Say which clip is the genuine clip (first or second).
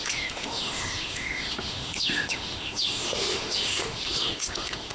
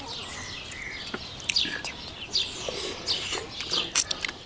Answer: second